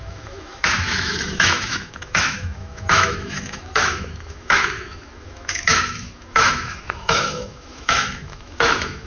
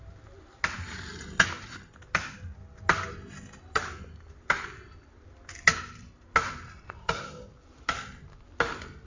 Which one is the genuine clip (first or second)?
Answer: second